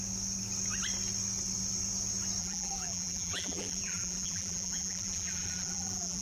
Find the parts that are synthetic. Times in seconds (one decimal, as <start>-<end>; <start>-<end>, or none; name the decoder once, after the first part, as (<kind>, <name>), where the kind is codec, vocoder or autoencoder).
2.4-6.2 (vocoder, BigVGAN v2)